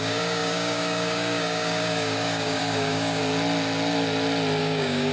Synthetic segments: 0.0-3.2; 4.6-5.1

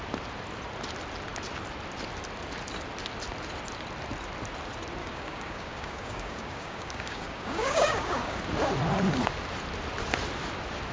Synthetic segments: 5.0-8.4